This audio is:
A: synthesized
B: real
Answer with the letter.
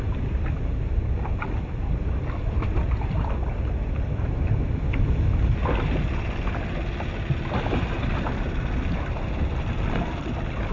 B